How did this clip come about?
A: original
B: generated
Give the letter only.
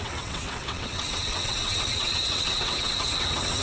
B